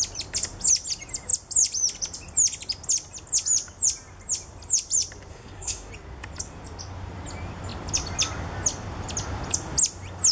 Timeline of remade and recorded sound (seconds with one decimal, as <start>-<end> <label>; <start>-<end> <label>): 0.0-5.3 recorded; 5.3-5.9 remade; 5.9-10.3 recorded